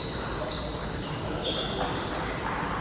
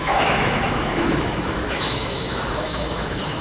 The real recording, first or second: first